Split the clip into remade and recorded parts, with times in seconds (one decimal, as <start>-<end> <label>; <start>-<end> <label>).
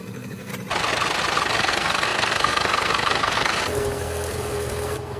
0.0-0.5 remade; 0.5-1.6 recorded; 1.6-5.2 remade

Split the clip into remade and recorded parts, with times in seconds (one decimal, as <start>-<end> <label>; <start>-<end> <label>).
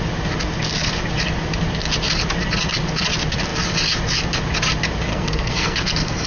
0.0-5.1 recorded; 5.1-6.3 remade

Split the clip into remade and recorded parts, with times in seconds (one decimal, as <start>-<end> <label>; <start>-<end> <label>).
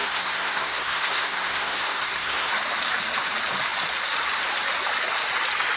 0.0-2.5 remade; 2.5-5.8 recorded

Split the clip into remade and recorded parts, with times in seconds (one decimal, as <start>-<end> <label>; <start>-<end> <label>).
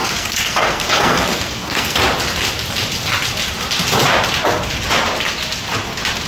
0.0-2.0 remade; 2.0-6.3 recorded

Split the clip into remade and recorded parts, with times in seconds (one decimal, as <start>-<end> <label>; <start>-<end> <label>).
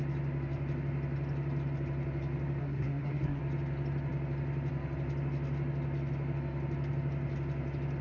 0.0-2.6 recorded; 2.6-3.4 remade; 3.4-8.0 recorded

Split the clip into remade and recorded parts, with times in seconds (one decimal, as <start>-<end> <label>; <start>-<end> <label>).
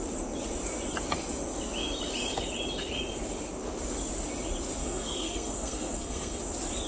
0.0-4.8 recorded; 4.8-6.4 remade; 6.4-6.9 recorded